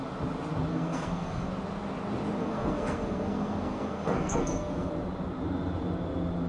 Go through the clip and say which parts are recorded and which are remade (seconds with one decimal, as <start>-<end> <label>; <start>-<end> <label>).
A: 0.0-0.7 recorded; 0.7-1.5 remade; 1.5-2.4 recorded; 2.4-4.9 remade; 4.9-6.5 recorded